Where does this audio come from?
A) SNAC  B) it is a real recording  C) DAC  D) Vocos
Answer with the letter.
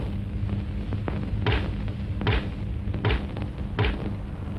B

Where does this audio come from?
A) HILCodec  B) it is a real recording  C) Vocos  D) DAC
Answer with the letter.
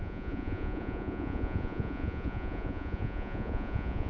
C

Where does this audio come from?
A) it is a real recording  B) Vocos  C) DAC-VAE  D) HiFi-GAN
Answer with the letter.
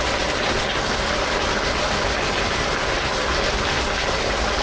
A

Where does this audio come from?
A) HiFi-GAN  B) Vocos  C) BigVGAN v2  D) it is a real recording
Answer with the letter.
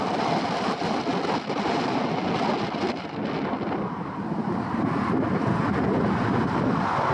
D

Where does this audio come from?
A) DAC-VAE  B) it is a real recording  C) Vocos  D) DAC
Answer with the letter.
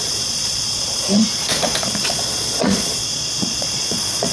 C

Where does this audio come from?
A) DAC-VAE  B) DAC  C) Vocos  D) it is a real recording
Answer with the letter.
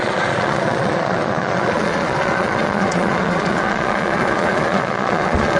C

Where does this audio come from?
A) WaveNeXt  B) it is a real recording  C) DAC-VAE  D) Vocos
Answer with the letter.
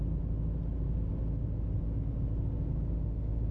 B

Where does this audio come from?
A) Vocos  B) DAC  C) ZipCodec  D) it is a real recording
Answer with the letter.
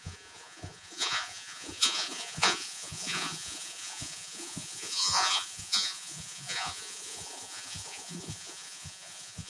A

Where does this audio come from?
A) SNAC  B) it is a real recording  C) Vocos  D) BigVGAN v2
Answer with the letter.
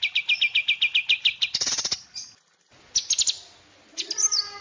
B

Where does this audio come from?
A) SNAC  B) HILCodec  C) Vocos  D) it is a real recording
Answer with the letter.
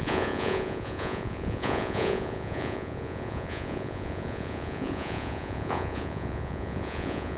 C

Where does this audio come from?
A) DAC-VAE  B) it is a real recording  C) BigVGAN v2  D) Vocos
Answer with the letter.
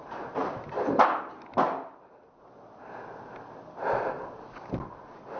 B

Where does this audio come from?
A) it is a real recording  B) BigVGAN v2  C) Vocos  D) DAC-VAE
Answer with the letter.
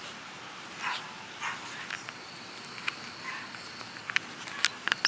A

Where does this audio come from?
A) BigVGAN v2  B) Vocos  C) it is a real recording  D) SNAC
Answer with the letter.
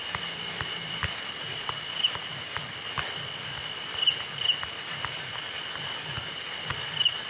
C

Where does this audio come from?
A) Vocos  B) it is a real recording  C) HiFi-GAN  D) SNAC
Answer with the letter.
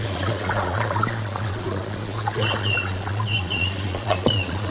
A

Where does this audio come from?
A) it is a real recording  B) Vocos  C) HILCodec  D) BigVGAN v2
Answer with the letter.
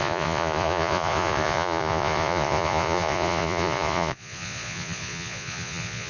B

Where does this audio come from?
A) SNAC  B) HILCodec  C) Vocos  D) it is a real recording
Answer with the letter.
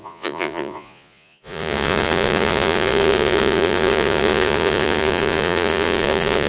C